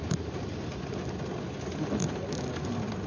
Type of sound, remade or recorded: recorded